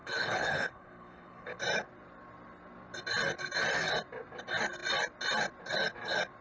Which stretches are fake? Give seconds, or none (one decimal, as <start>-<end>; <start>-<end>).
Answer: 0.0-1.6